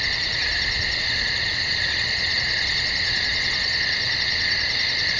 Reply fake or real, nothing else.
real